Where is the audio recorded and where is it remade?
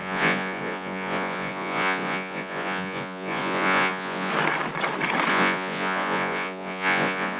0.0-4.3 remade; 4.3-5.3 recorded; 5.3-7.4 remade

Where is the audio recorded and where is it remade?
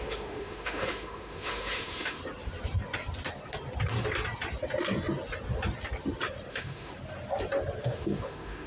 0.0-2.2 remade; 2.2-6.5 recorded; 6.5-6.9 remade; 6.9-7.8 recorded; 7.8-8.7 remade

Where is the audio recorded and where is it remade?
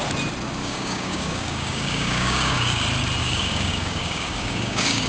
0.0-0.6 recorded; 0.6-2.8 remade; 2.8-3.2 recorded; 3.2-5.1 remade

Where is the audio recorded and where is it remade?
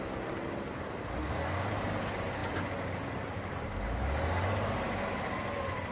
0.0-1.2 recorded; 1.2-1.7 remade; 1.7-5.9 recorded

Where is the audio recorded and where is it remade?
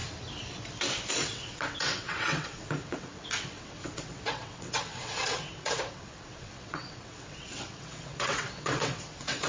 0.0-1.1 recorded; 1.1-9.5 remade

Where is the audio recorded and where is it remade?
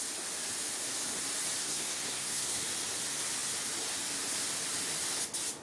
0.0-1.6 recorded; 1.6-2.6 remade; 2.6-5.6 recorded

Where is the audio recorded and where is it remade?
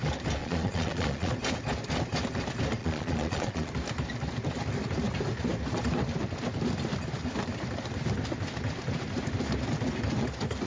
0.0-0.4 recorded; 0.4-1.3 remade; 1.3-2.8 recorded; 2.8-3.7 remade; 3.7-10.7 recorded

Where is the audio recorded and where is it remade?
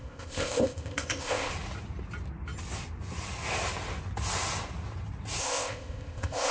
0.0-1.5 remade; 1.5-5.4 recorded; 5.4-6.5 remade